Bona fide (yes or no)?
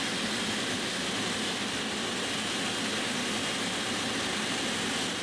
yes